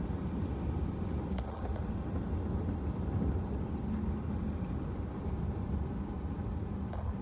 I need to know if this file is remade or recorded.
recorded